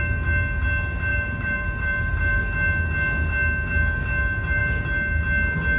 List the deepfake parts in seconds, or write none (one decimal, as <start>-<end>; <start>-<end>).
1.1-2.4